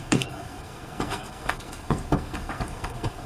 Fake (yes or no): yes